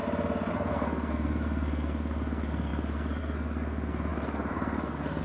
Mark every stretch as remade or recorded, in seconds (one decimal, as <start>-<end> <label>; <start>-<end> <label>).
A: 0.0-0.5 recorded; 0.5-5.2 remade